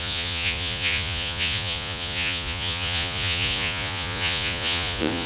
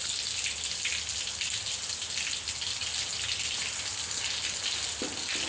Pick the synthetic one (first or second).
first